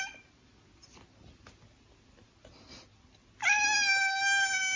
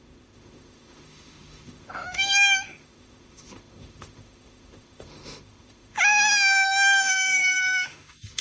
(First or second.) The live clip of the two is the first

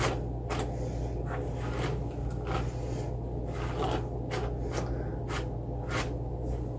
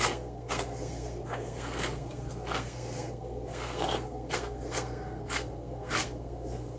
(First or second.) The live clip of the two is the first